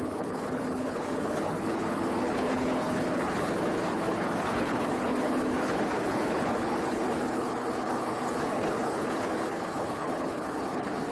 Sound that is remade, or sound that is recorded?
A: remade